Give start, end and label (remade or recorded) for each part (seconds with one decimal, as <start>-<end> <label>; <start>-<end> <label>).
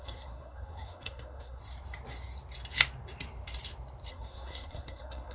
0.0-1.6 remade; 1.6-4.1 recorded; 4.1-5.3 remade